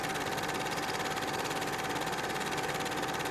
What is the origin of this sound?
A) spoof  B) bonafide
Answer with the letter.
A